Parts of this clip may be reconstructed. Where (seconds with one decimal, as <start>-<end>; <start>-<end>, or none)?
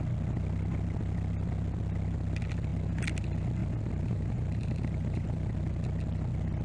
3.6-5.5